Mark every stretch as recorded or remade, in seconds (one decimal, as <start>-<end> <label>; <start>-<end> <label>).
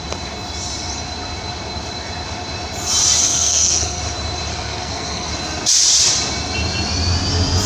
0.0-3.2 recorded; 3.2-4.0 remade; 4.0-4.5 recorded; 4.5-5.3 remade; 5.3-7.7 recorded